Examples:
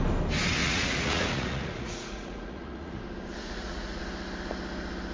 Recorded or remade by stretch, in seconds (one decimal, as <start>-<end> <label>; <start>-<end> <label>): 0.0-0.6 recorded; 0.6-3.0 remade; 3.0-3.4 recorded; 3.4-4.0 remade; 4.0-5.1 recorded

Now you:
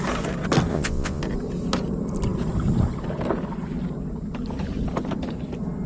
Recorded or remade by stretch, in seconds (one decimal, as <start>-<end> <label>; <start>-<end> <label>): 0.0-0.7 recorded; 0.7-1.2 remade; 1.2-5.9 recorded

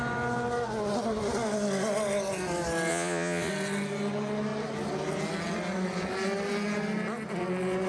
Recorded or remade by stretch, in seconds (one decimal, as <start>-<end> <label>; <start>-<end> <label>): 0.0-2.9 recorded; 2.9-3.5 remade; 3.5-7.9 recorded

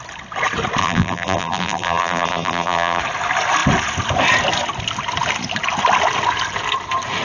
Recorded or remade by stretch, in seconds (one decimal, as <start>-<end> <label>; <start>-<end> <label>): 0.0-0.8 recorded; 0.8-3.0 remade; 3.0-7.2 recorded

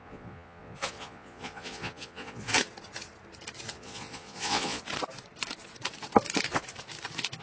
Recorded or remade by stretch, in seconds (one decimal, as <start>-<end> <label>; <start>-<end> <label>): 0.0-2.5 remade; 2.5-3.7 recorded; 3.7-4.8 remade; 4.8-7.4 recorded